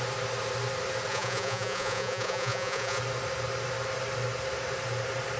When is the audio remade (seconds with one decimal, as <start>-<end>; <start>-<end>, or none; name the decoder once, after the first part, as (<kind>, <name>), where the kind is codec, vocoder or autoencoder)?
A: 1.1-3.0 (vocoder, Vocos)